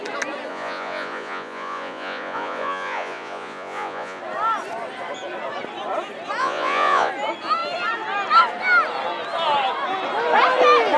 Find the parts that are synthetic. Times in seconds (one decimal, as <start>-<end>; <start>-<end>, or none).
0.5-4.2; 6.4-7.1